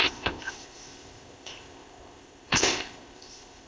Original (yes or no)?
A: no